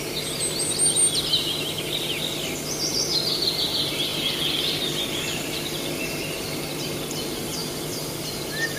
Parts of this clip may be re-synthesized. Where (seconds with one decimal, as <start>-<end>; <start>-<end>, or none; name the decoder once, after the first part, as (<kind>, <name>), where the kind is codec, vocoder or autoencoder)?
none